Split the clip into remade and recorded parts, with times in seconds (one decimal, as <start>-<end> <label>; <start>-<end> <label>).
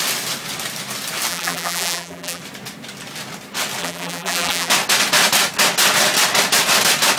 0.0-1.3 recorded; 1.3-2.4 remade; 2.4-3.8 recorded; 3.8-4.7 remade; 4.7-7.2 recorded